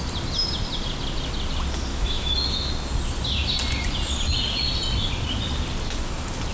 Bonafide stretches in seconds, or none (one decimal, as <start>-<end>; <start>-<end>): 0.0-1.9; 2.7-6.5